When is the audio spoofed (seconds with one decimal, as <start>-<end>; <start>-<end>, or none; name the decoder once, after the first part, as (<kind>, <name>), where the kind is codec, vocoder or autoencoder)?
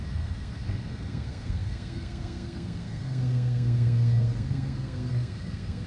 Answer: 0.0-5.9 (codec, SNAC)